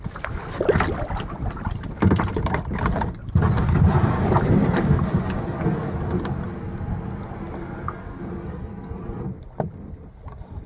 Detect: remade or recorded recorded